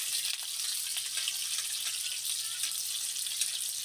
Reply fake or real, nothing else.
real